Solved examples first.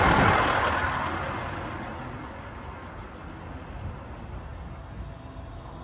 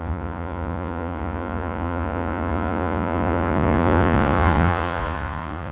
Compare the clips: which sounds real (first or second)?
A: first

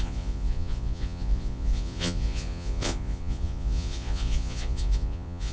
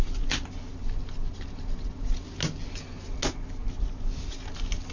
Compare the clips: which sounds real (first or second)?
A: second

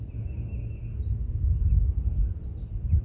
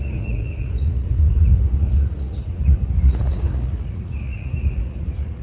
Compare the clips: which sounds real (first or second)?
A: first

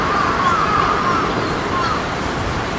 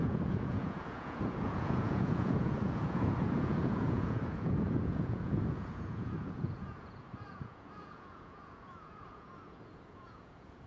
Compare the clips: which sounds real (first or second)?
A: first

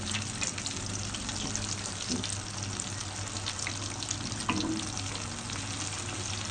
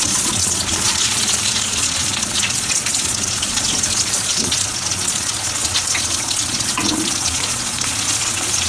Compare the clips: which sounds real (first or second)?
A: first